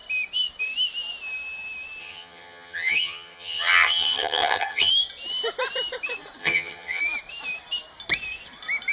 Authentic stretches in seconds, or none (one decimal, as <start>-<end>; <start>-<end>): 0.0-2.0; 4.9-6.4; 7.0-8.9

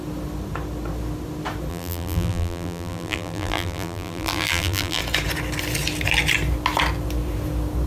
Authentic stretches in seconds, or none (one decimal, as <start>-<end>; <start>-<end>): 0.0-1.7; 5.0-7.9

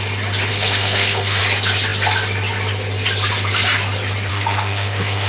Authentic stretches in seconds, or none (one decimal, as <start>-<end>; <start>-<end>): 0.0-0.5; 1.4-4.3

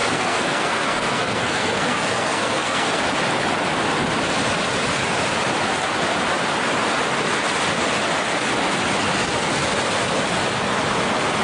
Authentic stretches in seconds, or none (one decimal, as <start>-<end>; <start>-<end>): 3.0-11.4

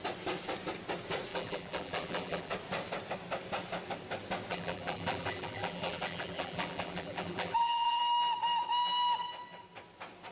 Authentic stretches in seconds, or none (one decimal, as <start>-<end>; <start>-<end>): 0.0-1.3; 2.5-4.5; 8.0-10.3

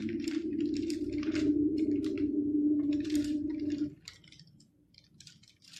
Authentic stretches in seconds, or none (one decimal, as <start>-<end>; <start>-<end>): 3.5-5.8

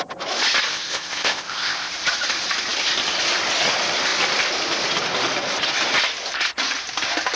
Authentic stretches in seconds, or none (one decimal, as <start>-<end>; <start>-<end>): 0.0-0.7; 1.9-7.4

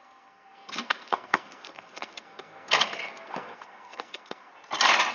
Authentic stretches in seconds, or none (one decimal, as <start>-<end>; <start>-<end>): 4.5-5.1